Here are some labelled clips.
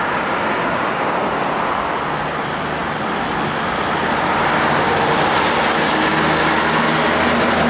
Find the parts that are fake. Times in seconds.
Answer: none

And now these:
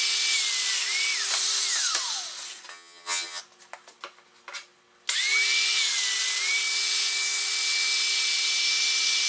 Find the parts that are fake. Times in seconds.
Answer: 2.7-3.4 (vocoder, HiFi-GAN)